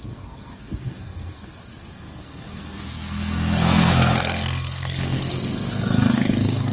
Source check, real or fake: fake